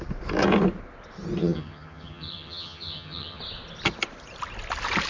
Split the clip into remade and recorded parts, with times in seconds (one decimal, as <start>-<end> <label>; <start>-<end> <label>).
0.0-1.4 recorded; 1.4-3.4 remade; 3.4-5.1 recorded